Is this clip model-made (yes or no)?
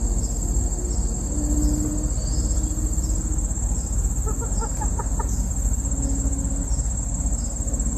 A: no